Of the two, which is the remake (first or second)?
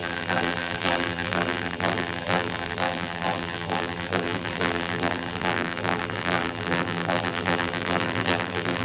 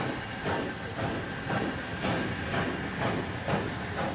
first